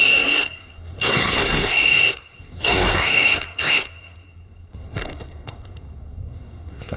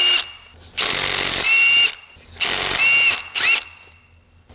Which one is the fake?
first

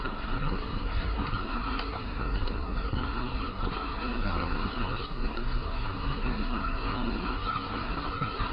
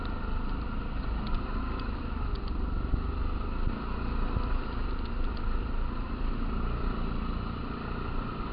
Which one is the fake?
first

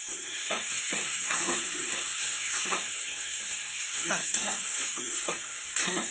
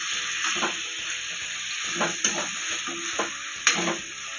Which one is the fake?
first